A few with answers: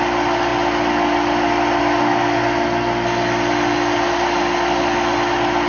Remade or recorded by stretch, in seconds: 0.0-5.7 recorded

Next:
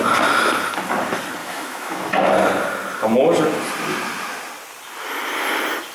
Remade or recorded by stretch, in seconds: 0.0-1.4 recorded; 1.4-2.0 remade; 2.0-5.9 recorded